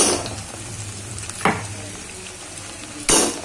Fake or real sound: real